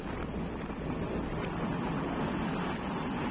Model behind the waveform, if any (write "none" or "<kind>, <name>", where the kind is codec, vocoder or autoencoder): none